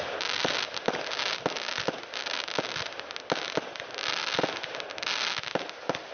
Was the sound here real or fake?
real